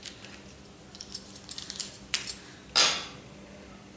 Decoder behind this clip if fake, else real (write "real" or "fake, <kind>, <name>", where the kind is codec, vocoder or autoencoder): real